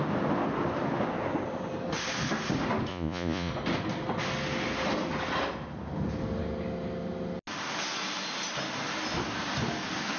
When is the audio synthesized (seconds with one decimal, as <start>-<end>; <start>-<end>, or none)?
2.9-3.5